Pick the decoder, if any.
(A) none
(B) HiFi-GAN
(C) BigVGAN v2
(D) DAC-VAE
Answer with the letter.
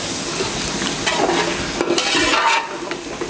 A